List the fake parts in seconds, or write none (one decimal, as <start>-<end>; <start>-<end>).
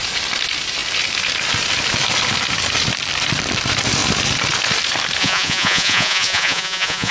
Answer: 5.2-7.1